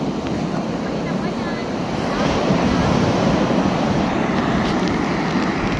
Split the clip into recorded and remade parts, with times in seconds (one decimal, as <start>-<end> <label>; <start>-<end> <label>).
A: 0.0-5.8 recorded